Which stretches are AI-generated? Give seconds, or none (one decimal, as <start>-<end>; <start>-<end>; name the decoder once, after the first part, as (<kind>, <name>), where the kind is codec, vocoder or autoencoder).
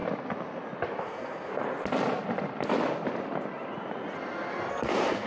1.0-1.5 (codec, SNAC); 4.7-5.3